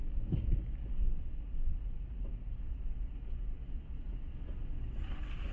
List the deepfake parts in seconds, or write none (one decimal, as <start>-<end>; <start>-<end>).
none